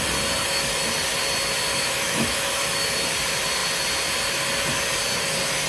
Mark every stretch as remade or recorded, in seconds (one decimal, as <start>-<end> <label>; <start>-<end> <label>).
0.0-1.7 recorded; 1.7-2.5 remade; 2.5-5.7 recorded